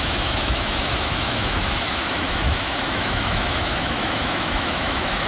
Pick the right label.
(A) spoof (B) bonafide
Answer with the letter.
A